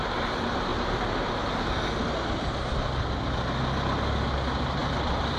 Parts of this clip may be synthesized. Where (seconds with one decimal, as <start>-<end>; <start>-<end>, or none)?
0.7-1.5